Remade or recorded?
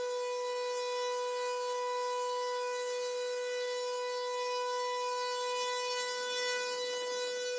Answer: recorded